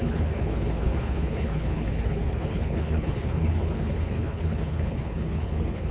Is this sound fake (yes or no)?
yes